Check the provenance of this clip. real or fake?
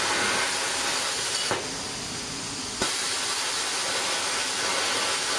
real